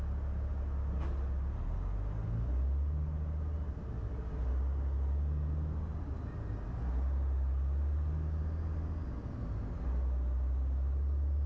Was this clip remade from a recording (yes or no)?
no